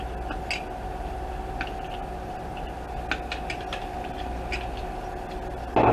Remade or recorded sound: recorded